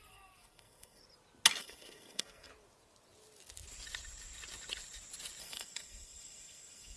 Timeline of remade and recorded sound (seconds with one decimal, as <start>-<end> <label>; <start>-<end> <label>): 0.0-1.0 remade; 1.0-1.6 recorded; 1.6-2.5 remade; 2.5-5.4 recorded; 5.4-7.0 remade